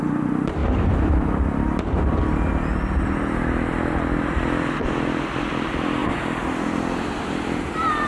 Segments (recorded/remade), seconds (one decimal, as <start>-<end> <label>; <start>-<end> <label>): 0.0-8.1 remade